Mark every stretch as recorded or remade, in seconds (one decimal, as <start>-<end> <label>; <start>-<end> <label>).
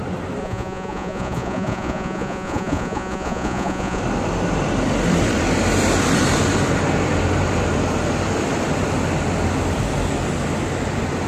0.0-0.4 recorded; 0.4-4.0 remade; 4.0-11.3 recorded